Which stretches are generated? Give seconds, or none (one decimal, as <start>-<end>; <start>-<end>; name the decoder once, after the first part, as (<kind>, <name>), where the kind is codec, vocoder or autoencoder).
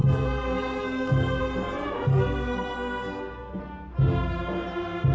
0.0-1.4 (codec, SNAC); 2.1-3.6